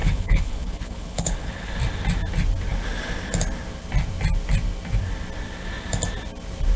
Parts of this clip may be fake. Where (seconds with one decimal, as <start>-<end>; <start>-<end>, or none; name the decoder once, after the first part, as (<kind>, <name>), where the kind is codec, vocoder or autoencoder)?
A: 0.0-1.7 (codec, HILCodec)